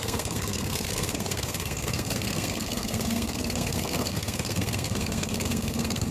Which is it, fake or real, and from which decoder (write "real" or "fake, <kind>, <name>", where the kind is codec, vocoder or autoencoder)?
fake, codec, SNAC